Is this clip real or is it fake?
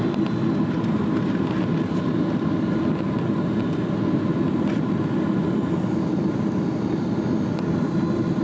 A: real